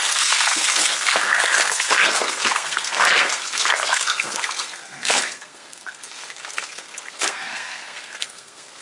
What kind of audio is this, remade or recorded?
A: remade